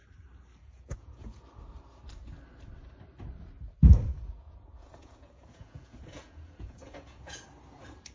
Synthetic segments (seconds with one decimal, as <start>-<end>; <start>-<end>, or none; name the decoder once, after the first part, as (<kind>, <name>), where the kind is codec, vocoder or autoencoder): 0.6-1.4 (vocoder, Vocos); 4.1-7.4